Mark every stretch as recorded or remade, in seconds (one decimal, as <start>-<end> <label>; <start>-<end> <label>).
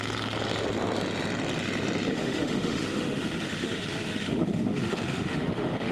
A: 0.0-2.1 recorded; 2.1-5.9 remade